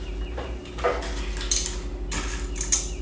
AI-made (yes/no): no